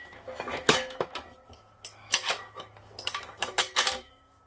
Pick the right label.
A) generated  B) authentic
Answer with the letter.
A